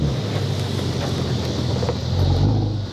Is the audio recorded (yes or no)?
yes